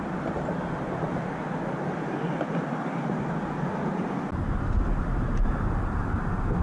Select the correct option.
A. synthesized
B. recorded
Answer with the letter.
B